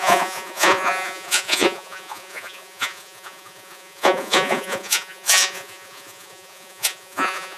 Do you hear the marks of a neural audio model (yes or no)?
yes